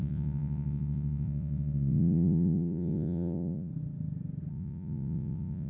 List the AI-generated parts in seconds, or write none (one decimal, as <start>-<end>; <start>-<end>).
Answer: 0.0-3.7; 4.5-5.7